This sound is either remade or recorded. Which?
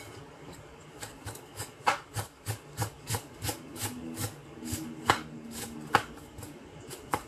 remade